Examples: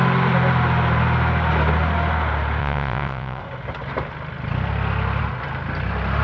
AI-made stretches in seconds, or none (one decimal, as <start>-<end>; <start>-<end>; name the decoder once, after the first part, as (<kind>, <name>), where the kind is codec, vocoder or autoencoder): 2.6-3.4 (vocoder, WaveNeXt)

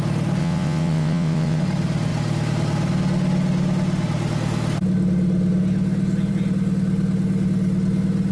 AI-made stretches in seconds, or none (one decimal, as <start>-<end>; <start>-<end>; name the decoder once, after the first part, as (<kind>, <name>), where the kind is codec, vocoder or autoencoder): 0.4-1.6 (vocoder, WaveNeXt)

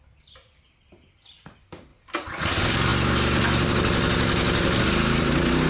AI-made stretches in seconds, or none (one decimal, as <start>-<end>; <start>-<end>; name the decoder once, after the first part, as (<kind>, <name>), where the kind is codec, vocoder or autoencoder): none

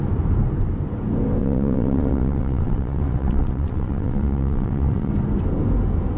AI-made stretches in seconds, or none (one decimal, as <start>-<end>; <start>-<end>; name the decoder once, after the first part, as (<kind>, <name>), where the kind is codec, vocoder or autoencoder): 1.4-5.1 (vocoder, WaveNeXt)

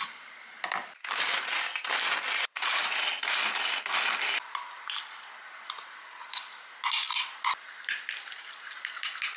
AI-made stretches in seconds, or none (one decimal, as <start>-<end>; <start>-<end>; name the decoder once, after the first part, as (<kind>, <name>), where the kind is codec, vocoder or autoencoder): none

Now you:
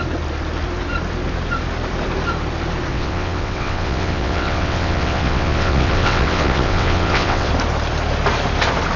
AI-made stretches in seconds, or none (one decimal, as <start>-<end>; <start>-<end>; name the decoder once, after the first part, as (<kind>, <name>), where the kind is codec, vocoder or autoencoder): 2.9-7.5 (vocoder, WaveNeXt)

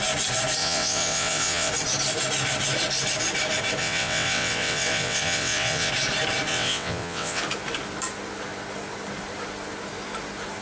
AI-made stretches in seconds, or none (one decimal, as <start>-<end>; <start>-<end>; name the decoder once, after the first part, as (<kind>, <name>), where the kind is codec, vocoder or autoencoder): 0.6-1.7 (vocoder, WaveNeXt); 3.8-5.9; 6.5-7.4

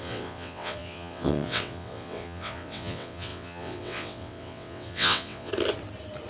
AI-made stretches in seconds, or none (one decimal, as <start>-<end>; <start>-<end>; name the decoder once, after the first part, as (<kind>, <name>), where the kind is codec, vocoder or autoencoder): 0.0-5.5 (vocoder, WaveNeXt)